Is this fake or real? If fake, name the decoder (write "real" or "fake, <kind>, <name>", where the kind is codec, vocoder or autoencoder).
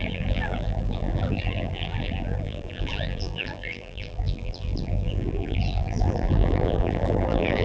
fake, vocoder, BigVGAN v2